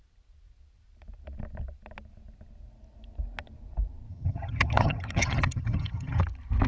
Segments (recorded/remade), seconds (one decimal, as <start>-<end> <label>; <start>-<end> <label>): 0.0-4.1 recorded; 4.1-6.2 remade; 6.2-6.7 recorded